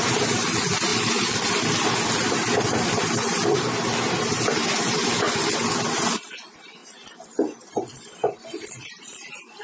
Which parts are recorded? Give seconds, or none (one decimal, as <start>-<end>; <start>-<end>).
0.0-9.6